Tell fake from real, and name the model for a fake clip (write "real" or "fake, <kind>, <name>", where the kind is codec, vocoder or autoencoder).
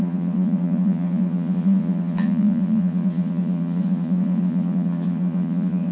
fake, vocoder, Vocos